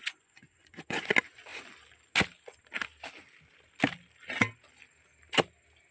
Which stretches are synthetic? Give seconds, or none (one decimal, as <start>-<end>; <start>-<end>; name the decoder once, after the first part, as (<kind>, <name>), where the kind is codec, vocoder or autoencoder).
0.0-1.1 (vocoder, Vocos)

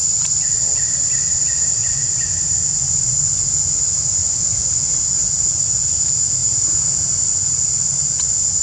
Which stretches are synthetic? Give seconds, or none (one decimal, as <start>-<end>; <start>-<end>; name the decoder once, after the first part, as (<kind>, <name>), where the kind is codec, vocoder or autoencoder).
1.8-3.2 (vocoder, Vocos); 4.2-4.8